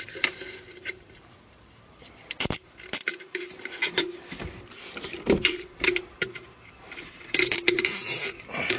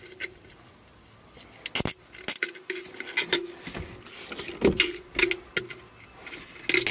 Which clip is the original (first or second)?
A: second